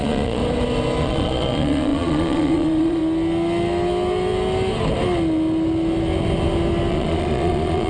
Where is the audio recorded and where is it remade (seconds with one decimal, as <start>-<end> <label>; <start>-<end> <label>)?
0.0-0.4 remade; 0.4-1.0 recorded; 1.0-3.0 remade; 3.0-6.9 recorded; 6.9-7.9 remade